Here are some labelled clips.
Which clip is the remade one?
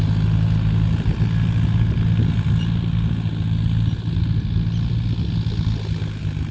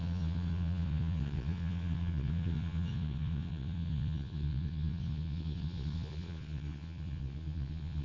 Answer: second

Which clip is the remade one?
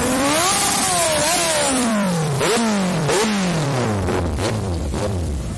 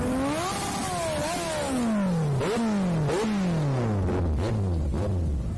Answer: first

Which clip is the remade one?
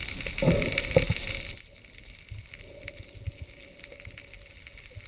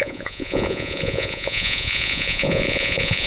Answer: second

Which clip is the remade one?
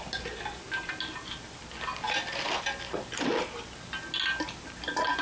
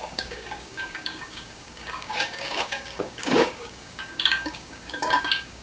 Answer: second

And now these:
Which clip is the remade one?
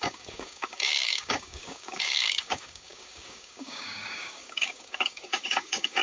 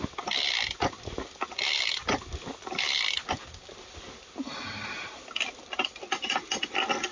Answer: first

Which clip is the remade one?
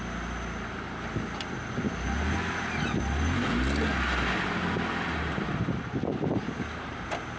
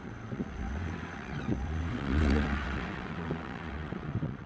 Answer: second